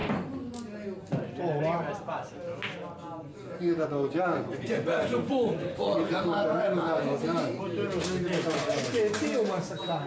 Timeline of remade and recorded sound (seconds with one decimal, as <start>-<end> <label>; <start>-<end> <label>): 0.0-3.3 recorded; 3.3-7.6 remade; 7.6-10.1 recorded